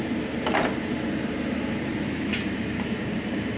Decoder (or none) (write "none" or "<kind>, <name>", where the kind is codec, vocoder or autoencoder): none